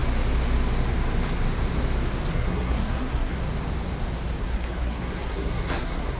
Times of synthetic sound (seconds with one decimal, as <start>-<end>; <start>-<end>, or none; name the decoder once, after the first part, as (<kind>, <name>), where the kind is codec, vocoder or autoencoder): 2.3-3.4 (codec, SNAC); 4.4-6.2